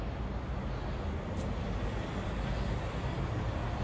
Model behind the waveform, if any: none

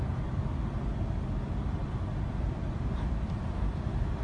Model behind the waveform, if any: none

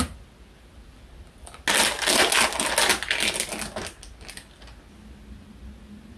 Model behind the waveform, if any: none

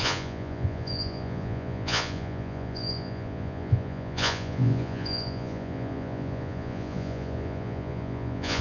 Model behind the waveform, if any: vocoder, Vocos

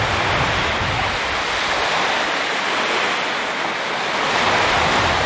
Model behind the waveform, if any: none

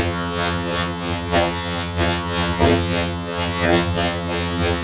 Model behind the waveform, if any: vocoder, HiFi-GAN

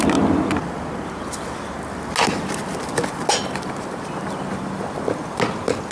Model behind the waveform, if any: none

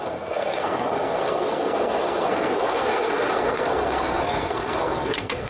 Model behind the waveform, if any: codec, SNAC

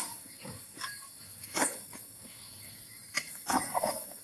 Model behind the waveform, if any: codec, DAC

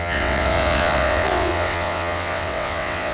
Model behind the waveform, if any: vocoder, WaveNeXt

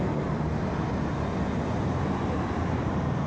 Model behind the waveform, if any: none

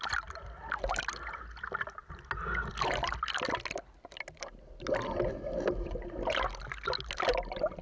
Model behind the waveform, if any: none